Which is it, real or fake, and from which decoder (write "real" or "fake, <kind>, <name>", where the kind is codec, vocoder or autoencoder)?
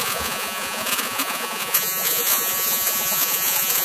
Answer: fake, vocoder, Vocos